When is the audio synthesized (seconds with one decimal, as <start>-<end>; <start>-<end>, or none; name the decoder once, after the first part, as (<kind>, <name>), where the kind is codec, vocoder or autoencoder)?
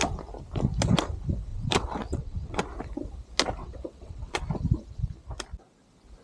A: 1.5-2.6 (vocoder, WaveNeXt); 3.6-4.4